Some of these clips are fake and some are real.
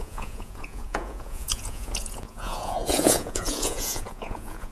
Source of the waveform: fake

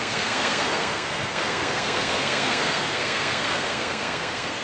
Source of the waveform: fake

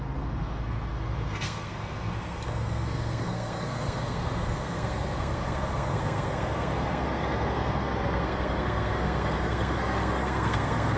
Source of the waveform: fake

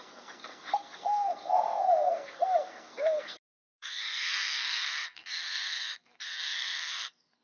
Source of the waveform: fake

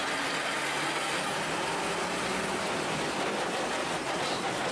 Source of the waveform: real